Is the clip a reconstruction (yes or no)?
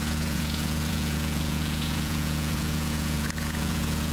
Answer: yes